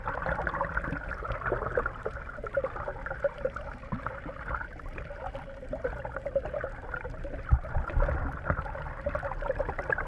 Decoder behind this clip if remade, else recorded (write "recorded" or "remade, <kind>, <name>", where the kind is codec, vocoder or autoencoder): recorded